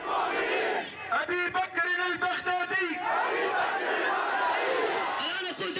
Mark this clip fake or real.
real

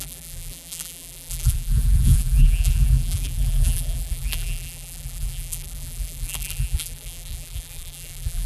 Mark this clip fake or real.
fake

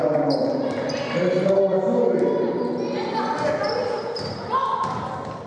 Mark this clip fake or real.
fake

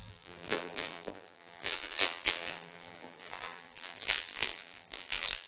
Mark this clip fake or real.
fake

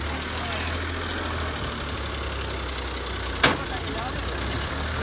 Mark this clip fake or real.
real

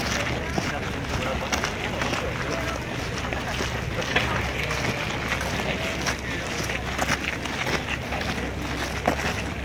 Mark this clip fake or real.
real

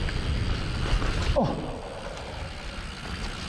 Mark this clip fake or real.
real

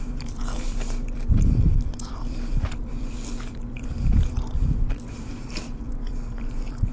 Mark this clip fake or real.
fake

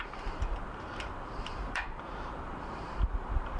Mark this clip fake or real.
fake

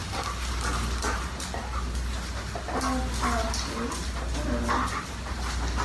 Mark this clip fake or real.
real